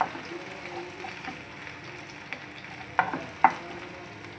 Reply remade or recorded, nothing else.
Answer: recorded